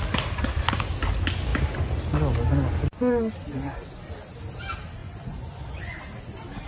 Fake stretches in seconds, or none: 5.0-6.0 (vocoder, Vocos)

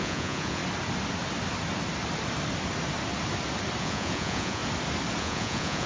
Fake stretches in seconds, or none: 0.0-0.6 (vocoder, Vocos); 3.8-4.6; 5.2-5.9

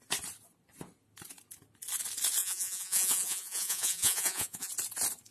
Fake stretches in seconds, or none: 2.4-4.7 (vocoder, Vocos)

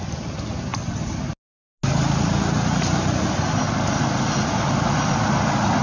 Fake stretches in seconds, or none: none

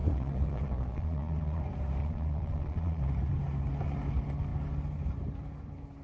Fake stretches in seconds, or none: 0.0-1.6 (vocoder, Vocos); 2.0-3.0

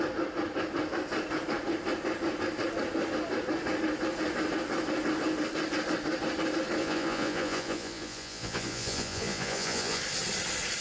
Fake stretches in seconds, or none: 6.8-10.0 (vocoder, Vocos)